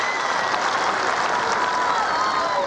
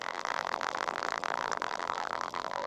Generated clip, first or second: second